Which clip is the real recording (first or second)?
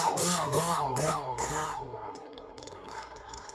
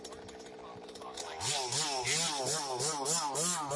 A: second